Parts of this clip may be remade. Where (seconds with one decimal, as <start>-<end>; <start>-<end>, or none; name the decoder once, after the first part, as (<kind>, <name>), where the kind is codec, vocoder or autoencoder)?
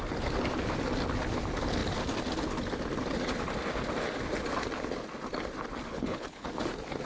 5.9-6.5 (codec, HILCodec)